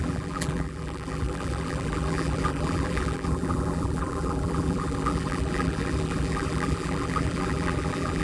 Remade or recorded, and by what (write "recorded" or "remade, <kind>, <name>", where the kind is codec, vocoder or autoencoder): remade, vocoder, BigVGAN v2